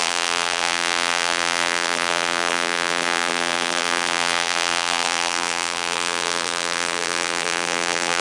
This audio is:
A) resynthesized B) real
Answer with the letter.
A